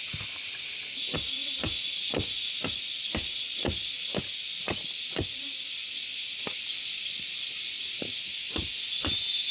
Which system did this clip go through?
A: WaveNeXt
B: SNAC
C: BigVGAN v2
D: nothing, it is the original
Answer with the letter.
C